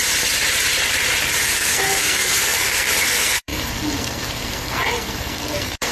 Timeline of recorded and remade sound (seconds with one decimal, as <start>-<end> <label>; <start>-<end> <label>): 0.0-1.4 recorded; 1.4-5.9 remade